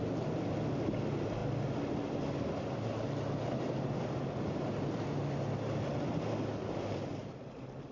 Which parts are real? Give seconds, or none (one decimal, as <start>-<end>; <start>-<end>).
0.0-7.9